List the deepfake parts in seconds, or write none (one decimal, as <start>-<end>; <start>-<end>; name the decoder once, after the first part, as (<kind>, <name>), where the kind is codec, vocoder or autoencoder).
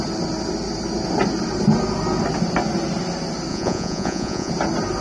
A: 3.5-4.5 (vocoder, Vocos)